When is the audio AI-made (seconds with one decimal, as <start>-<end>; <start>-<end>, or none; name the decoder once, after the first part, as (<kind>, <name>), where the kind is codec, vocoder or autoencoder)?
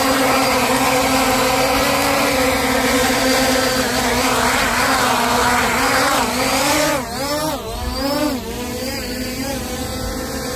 0.0-0.7 (vocoder, BigVGAN v2); 2.3-4.1; 8.8-10.6